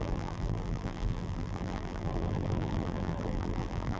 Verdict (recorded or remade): remade